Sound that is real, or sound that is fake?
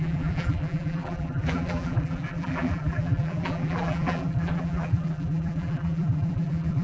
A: fake